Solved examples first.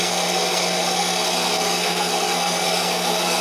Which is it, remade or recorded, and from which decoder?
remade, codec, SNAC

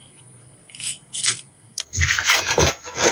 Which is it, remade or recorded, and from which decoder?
remade, codec, SNAC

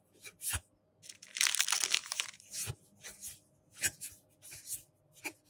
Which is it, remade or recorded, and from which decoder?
recorded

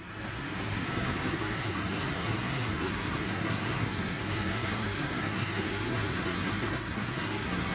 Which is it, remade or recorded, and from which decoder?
remade, codec, SNAC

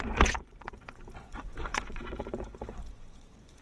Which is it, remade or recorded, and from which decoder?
remade, vocoder, Vocos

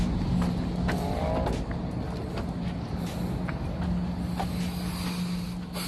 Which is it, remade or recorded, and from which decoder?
recorded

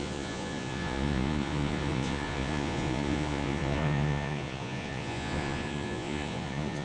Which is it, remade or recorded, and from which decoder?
remade, vocoder, Vocos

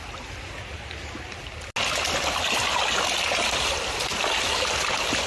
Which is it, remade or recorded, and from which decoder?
recorded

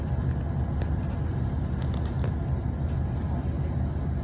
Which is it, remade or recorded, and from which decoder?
recorded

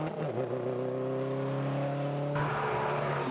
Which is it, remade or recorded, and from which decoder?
recorded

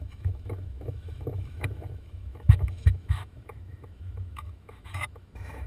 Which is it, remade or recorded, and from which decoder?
remade, autoencoder, DAC-VAE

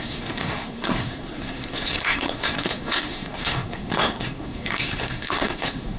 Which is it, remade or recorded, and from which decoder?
remade, codec, SNAC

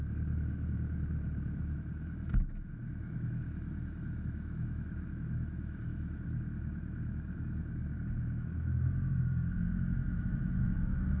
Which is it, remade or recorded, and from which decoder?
remade, autoencoder, DAC-VAE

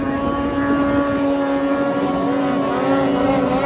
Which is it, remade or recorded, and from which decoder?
recorded